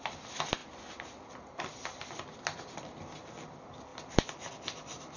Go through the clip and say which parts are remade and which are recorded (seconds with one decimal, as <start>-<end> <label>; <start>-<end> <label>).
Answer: 0.0-5.2 recorded